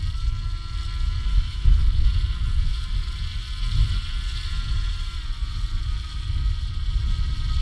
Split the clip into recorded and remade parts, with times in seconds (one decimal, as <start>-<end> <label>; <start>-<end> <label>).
0.0-1.3 recorded; 1.3-1.8 remade; 1.8-7.6 recorded